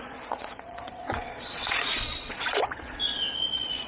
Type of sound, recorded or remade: remade